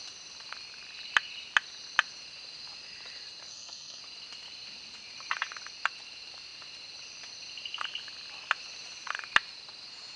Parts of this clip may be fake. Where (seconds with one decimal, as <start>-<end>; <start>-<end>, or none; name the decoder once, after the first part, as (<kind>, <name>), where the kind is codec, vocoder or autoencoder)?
3.5-4.0 (codec, SNAC)